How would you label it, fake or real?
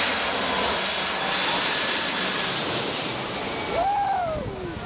real